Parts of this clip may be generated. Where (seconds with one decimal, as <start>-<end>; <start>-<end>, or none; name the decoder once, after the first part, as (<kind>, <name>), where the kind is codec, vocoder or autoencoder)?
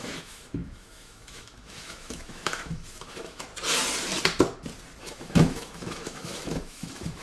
0.0-3.5 (autoencoder, DAC-VAE); 5.0-7.2